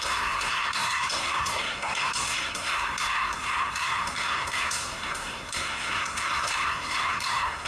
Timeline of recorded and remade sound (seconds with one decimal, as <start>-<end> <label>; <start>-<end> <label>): 0.0-7.7 remade